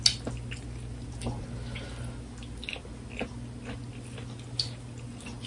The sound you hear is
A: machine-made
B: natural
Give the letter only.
B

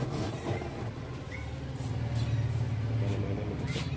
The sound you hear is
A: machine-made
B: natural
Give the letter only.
B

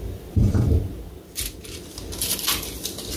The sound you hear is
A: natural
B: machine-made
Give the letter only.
B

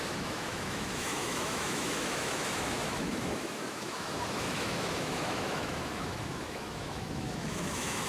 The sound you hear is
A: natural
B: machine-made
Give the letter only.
B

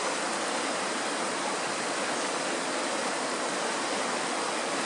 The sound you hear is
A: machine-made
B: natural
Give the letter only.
B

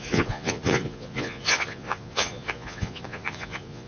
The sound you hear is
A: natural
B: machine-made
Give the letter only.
B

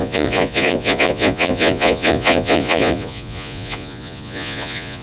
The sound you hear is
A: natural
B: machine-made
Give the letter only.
B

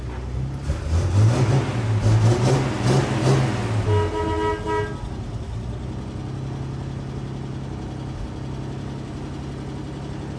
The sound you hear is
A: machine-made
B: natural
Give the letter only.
B